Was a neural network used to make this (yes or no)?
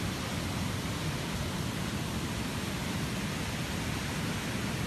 no